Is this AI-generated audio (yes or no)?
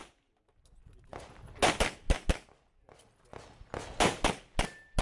no